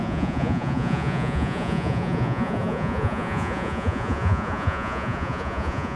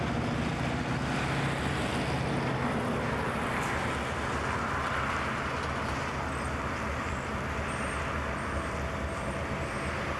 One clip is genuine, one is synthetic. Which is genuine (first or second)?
second